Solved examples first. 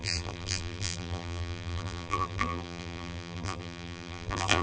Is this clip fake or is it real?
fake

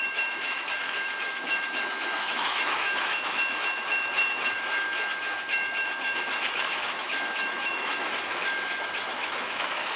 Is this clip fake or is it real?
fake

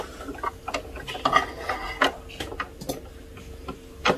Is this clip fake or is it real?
real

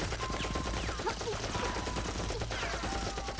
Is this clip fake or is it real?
fake